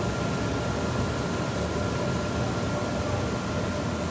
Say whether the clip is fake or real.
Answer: real